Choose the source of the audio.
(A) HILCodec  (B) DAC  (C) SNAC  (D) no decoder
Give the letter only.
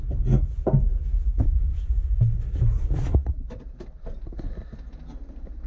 D